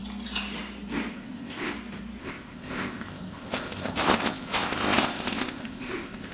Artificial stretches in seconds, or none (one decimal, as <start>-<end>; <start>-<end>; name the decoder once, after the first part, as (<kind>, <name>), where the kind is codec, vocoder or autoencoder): 1.1-1.7 (codec, ZipCodec); 2.2-6.3